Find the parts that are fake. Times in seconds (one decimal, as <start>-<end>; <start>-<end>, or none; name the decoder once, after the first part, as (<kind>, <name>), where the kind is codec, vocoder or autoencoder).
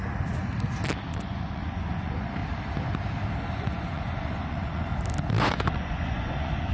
1.0-2.4 (vocoder, Vocos); 3.5-4.9; 5.5-6.7